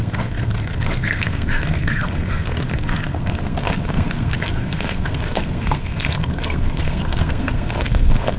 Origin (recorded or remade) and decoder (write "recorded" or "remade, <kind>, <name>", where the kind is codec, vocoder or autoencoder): remade, codec, SNAC